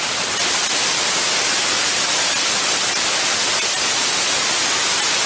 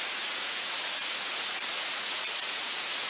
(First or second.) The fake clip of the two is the second